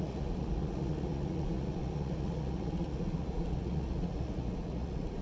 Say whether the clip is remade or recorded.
remade